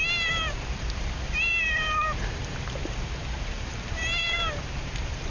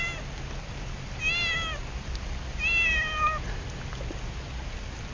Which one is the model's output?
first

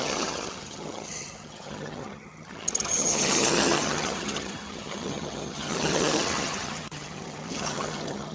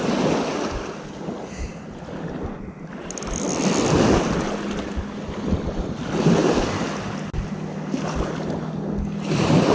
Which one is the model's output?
first